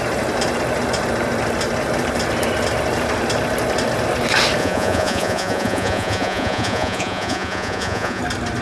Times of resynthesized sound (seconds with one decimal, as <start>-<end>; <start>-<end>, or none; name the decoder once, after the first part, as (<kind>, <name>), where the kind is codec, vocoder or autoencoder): 4.6-8.2 (vocoder, Vocos)